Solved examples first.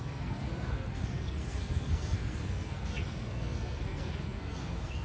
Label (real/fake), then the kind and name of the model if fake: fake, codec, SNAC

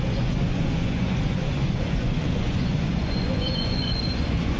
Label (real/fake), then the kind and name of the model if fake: fake, vocoder, Vocos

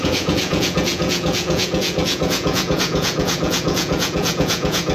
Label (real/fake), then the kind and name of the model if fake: fake, vocoder, Vocos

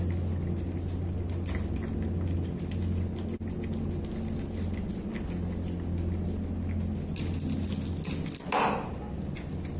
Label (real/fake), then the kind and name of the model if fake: real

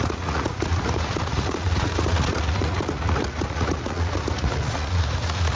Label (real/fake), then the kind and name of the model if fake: fake, vocoder, Vocos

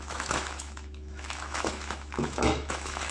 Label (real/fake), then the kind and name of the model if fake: fake, autoencoder, DAC-VAE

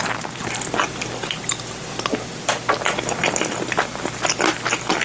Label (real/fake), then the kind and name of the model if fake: real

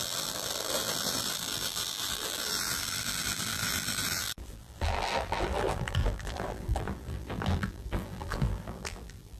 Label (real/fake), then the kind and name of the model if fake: fake, vocoder, BigVGAN v2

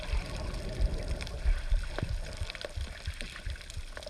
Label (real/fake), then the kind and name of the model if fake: real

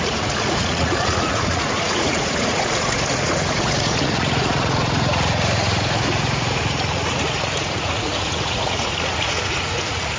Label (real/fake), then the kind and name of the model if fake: fake, vocoder, Vocos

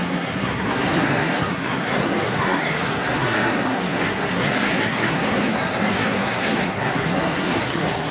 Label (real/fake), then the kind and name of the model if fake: fake, codec, SNAC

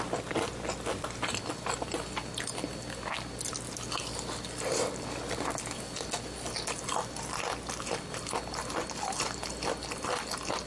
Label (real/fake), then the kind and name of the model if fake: real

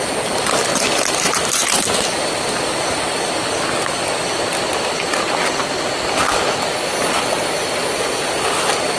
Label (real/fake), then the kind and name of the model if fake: real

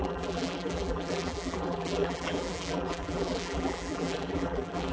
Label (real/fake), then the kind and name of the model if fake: fake, vocoder, BigVGAN v2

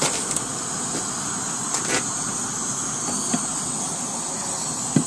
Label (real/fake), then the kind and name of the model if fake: real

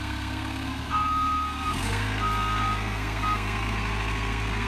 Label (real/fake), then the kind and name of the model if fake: fake, codec, SNAC